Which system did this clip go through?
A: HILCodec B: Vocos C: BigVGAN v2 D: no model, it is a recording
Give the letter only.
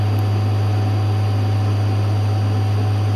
D